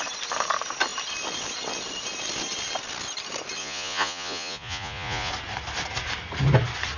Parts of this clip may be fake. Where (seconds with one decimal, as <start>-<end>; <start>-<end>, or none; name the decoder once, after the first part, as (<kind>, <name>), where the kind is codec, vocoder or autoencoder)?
3.6-5.3 (vocoder, Vocos)